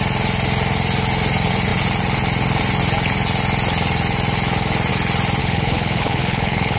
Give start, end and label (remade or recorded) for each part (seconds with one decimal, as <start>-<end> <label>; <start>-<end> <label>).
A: 0.0-5.4 recorded; 5.4-6.8 remade